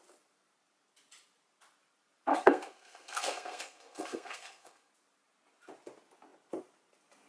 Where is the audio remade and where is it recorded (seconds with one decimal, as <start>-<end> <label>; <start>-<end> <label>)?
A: 0.0-2.3 recorded; 2.3-4.9 remade; 4.9-7.3 recorded